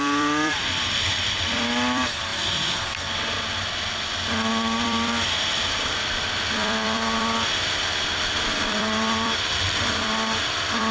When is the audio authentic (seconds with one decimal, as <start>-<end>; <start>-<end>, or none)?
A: 2.3-4.5